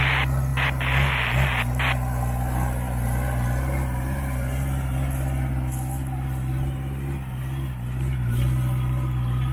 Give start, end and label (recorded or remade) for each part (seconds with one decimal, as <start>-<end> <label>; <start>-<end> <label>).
0.0-9.5 recorded